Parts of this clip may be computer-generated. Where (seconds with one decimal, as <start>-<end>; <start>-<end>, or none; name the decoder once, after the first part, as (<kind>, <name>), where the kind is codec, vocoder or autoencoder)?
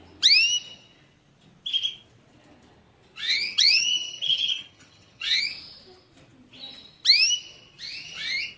3.3-5.4 (vocoder, HiFi-GAN)